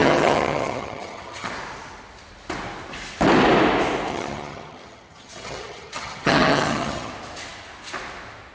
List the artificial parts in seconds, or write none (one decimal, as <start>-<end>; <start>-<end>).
0.0-1.5; 4.1-7.1